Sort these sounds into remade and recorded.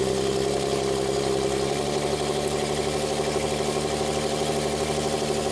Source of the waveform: recorded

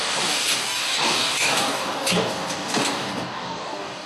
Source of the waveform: remade